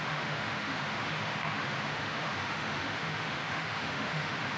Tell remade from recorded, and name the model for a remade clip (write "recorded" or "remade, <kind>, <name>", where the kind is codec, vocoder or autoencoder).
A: remade, autoencoder, DAC-VAE